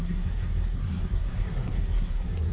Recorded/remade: remade